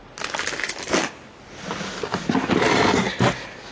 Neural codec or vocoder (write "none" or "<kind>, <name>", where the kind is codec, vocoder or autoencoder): none